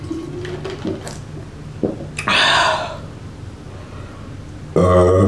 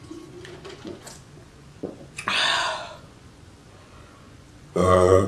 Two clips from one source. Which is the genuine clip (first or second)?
first